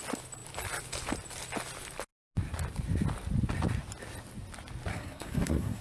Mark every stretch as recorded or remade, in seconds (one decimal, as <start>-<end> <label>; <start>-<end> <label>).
0.0-4.9 recorded; 4.9-5.8 remade